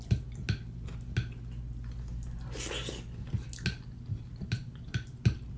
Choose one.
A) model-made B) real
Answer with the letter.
B